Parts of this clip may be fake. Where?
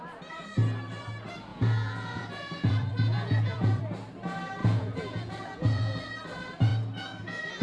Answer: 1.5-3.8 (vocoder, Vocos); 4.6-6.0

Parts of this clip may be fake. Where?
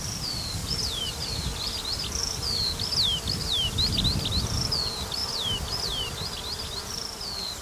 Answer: 0.0-0.6 (vocoder, BigVGAN v2); 2.2-7.6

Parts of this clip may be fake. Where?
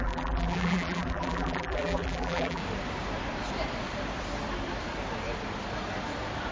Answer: 0.0-2.6 (vocoder, BigVGAN v2)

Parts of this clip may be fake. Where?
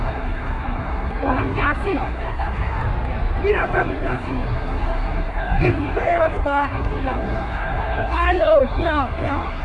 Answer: 0.0-2.8 (codec, SNAC); 3.5-9.6